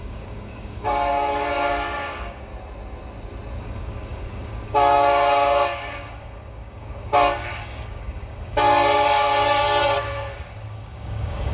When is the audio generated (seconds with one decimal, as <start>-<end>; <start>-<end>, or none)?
0.0-2.5; 3.6-11.5